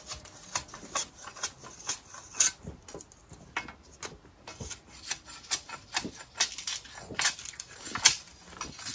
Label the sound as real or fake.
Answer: real